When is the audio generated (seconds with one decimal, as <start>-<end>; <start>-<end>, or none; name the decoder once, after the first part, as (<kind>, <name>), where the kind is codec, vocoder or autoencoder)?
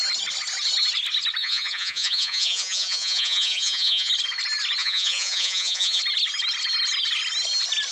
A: 1.4-4.1 (vocoder, Vocos); 4.8-6.0